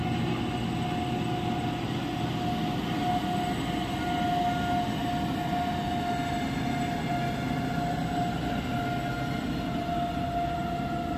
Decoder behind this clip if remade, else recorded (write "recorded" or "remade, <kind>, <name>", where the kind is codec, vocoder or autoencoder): recorded